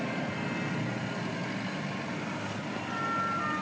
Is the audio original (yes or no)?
yes